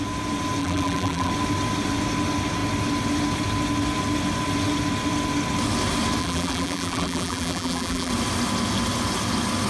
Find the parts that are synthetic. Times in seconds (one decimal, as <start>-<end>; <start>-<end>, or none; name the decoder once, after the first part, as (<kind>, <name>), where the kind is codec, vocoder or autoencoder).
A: 0.6-1.3 (vocoder, BigVGAN v2); 6.2-8.1